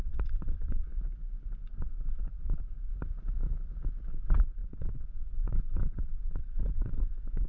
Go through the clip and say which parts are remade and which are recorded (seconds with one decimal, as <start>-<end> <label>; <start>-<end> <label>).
0.0-0.9 remade; 0.9-1.6 recorded; 1.6-2.9 remade; 2.9-4.1 recorded; 4.1-7.5 remade